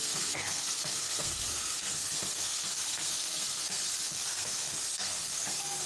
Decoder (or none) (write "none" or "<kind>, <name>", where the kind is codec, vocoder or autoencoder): codec, SNAC